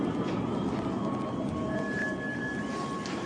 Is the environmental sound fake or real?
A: real